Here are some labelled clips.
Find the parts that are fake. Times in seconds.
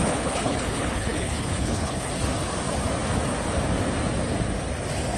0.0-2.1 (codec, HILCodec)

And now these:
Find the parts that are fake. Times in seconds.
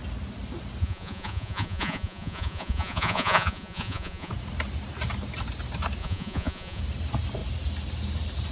0.8-4.3 (vocoder, Vocos); 6.0-6.8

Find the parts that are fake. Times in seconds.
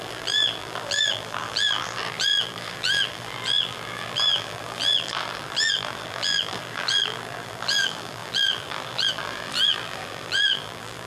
0.0-11.1 (vocoder, BigVGAN v2)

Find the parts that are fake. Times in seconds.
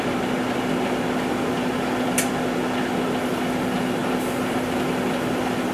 none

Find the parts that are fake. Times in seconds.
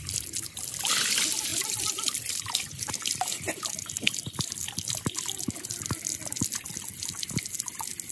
none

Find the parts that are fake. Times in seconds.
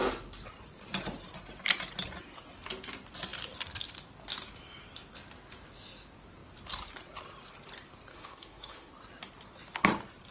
8.1-8.9 (autoencoder, DAC-VAE)